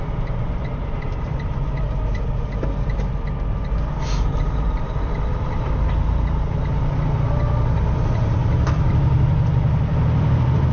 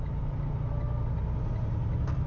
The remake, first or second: first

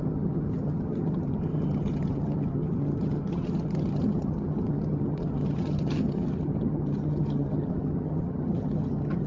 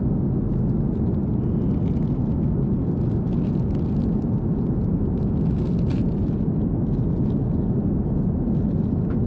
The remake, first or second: first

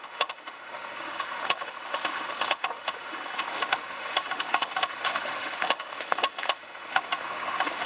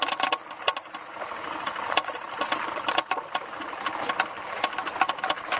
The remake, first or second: first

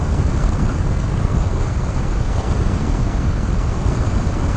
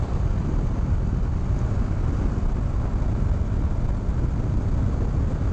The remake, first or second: first